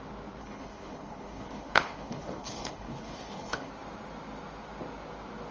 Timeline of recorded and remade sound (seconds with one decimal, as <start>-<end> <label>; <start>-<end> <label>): 0.0-0.4 recorded; 0.4-3.7 remade; 3.7-5.5 recorded

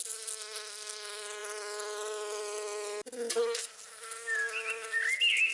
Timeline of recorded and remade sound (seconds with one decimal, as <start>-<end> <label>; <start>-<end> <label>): 0.0-5.5 recorded

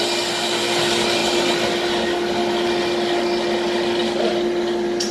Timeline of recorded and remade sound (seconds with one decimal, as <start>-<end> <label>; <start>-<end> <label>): 0.0-5.1 recorded

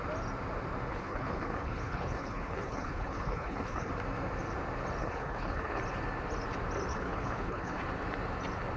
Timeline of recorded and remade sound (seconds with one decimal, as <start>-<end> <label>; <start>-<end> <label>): 0.0-0.9 recorded; 0.9-3.9 remade; 3.9-5.0 recorded; 5.0-5.8 remade; 5.8-6.9 recorded; 6.9-7.8 remade; 7.8-8.8 recorded

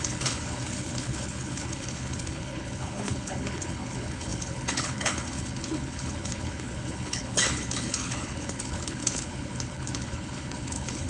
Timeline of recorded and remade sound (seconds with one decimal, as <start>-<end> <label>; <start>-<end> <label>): 0.0-11.1 remade